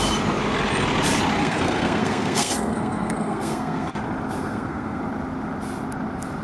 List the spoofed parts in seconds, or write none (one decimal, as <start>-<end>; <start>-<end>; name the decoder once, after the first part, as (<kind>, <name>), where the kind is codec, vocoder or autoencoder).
1.4-3.9 (codec, SNAC); 4.4-5.0